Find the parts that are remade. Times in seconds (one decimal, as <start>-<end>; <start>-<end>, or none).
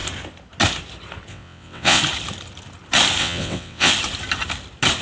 1.3-2.0; 3.2-3.9